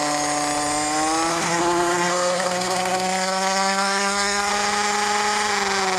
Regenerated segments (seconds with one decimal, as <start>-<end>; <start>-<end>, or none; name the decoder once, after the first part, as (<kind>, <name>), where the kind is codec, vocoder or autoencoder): 1.3-4.5 (codec, SNAC)